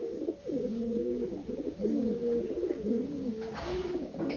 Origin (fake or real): fake